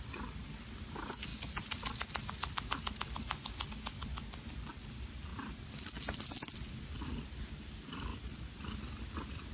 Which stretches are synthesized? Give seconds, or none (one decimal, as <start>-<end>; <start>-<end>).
8.1-8.7